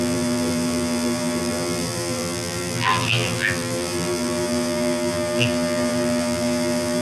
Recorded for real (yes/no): no